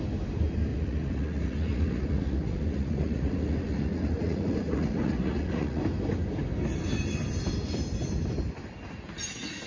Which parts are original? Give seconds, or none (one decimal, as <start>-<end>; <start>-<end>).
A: 0.0-0.7; 5.8-9.7